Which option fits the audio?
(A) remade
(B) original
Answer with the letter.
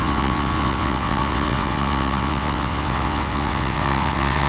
A